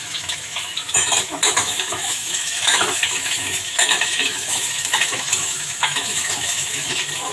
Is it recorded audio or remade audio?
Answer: remade